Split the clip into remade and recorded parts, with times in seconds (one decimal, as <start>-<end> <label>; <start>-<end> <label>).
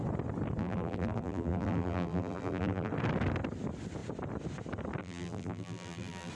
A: 0.0-0.6 recorded; 0.6-2.9 remade; 2.9-5.0 recorded; 5.0-6.3 remade